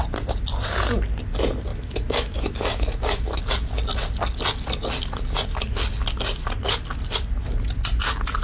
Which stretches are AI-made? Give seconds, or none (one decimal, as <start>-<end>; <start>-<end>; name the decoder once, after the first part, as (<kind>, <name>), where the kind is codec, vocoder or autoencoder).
1.7-3.4 (autoencoder, DAC-VAE)